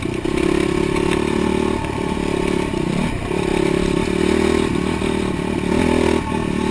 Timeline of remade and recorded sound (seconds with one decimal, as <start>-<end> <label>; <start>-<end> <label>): 0.0-6.7 recorded